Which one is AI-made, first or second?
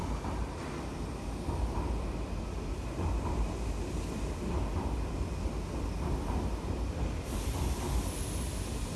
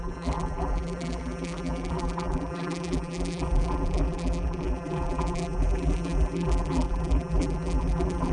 second